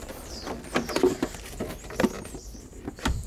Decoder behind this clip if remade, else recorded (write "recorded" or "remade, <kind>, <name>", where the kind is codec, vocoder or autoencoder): recorded